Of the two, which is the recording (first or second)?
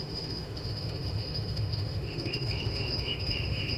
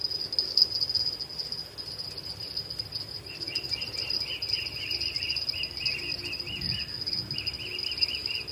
second